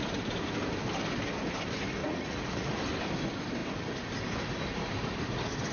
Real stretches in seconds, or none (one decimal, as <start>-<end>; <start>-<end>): 0.0-2.0; 2.8-5.7